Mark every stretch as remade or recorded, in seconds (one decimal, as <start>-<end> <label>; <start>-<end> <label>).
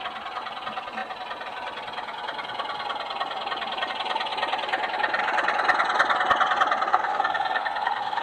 0.0-6.9 recorded; 6.9-8.2 remade